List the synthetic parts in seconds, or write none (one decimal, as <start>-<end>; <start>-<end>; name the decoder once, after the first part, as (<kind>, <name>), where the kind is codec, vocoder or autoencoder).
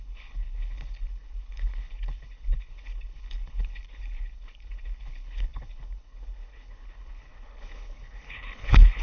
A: 0.0-9.0 (codec, HILCodec)